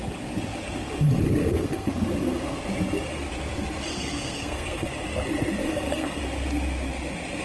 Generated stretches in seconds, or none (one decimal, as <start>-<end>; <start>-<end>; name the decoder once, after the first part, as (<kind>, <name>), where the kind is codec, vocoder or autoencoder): 1.4-1.9 (codec, SNAC); 3.9-4.9; 5.6-6.2